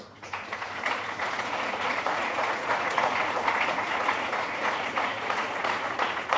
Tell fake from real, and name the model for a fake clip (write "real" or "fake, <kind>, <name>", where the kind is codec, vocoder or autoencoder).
fake, vocoder, Vocos